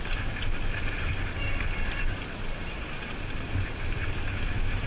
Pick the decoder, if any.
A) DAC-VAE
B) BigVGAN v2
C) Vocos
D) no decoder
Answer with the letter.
D